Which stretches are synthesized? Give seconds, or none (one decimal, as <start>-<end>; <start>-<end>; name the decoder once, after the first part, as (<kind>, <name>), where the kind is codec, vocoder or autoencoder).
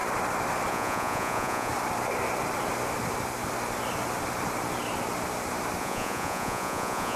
0.7-1.7 (vocoder, Vocos); 5.8-7.2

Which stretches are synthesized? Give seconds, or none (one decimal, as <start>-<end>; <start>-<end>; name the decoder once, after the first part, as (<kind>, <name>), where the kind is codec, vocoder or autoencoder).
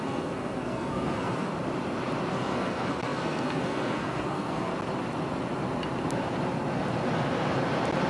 0.0-1.5 (codec, SNAC); 2.3-4.7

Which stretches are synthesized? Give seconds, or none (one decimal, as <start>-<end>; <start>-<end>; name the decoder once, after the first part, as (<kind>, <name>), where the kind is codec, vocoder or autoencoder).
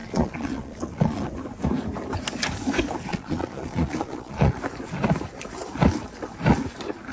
0.0-1.3 (vocoder, Vocos); 3.1-4.6